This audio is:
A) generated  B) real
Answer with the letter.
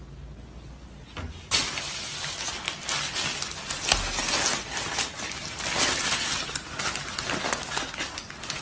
B